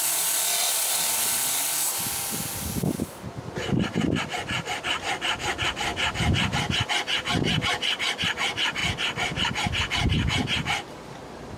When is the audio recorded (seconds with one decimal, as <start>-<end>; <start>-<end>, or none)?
0.0-11.6